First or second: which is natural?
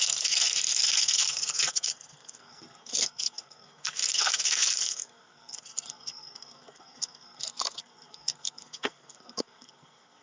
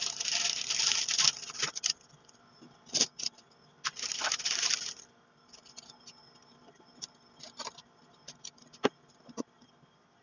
second